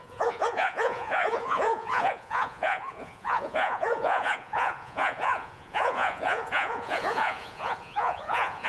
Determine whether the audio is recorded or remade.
remade